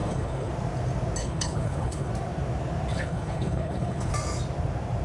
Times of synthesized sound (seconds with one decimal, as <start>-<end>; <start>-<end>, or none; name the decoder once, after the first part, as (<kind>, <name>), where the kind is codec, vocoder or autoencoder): 0.0-0.5 (codec, HILCodec); 1.2-2.1; 2.9-4.1